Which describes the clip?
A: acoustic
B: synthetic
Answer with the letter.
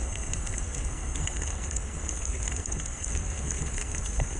B